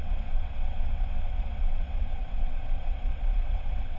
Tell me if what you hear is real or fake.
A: fake